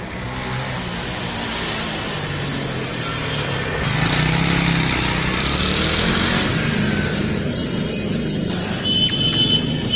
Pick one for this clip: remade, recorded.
recorded